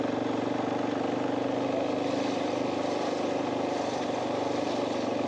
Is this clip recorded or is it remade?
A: recorded